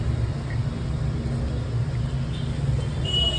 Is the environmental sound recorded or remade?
recorded